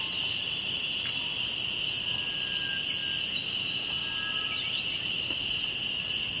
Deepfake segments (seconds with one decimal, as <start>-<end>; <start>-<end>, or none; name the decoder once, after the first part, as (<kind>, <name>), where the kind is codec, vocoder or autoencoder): 0.0-3.0 (vocoder, BigVGAN v2); 4.4-6.4